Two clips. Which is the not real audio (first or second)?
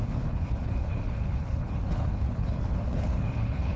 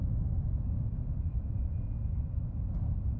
first